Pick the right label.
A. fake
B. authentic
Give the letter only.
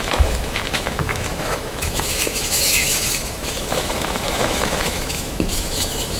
A